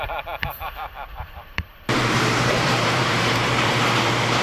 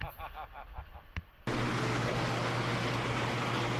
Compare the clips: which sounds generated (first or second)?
first